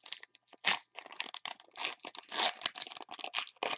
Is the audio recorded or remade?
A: recorded